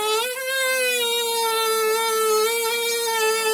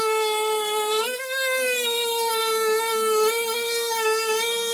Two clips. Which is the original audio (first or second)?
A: first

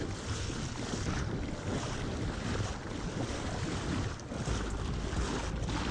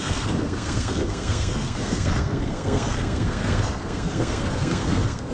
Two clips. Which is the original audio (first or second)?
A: first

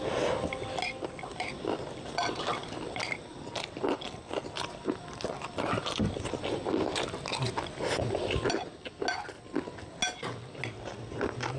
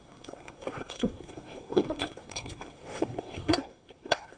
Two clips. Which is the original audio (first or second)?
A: first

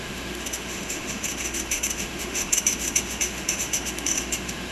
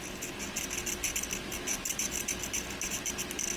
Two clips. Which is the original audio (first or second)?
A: second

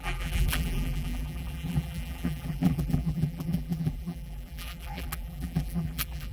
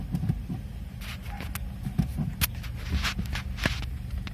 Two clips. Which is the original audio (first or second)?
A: second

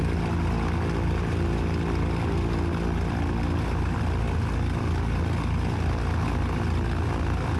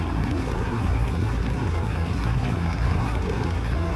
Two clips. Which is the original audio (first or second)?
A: first